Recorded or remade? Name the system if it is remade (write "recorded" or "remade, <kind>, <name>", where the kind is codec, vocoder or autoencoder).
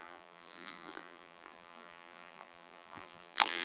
remade, vocoder, BigVGAN v2